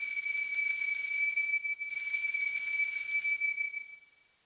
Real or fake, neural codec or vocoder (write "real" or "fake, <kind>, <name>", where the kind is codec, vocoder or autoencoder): real